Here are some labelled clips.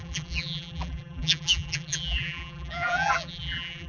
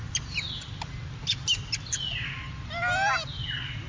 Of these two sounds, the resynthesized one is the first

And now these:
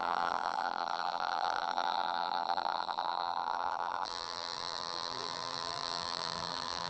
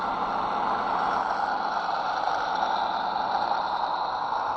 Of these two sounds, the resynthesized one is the first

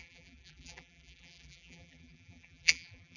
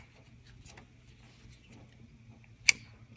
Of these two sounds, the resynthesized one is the first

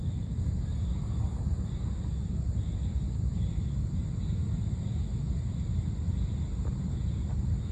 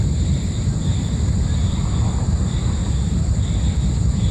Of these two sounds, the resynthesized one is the second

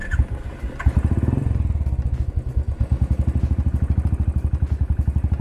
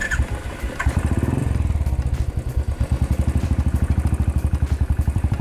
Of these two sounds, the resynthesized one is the second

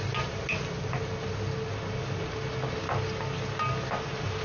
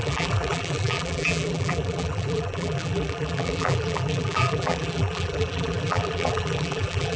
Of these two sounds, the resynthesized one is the second